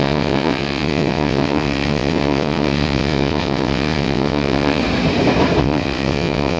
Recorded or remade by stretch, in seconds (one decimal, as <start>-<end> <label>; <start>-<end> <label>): 0.0-4.8 remade; 4.8-5.6 recorded; 5.6-6.6 remade